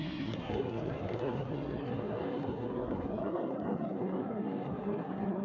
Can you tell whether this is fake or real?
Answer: fake